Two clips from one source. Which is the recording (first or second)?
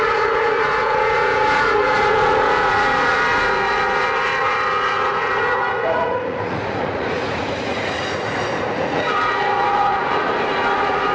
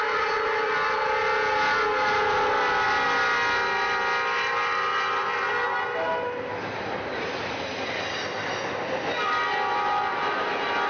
second